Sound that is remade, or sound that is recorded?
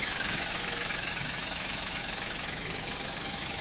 remade